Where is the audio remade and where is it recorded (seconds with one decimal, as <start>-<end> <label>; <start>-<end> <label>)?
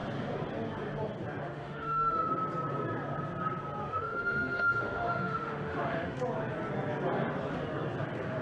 0.0-1.4 recorded; 1.4-2.3 remade; 2.3-3.8 recorded; 3.8-6.2 remade; 6.2-8.4 recorded